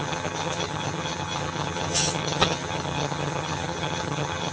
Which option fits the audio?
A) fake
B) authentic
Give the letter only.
A